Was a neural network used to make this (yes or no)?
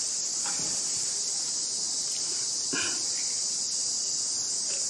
no